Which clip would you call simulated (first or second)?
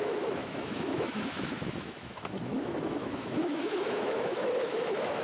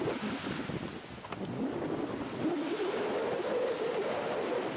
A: first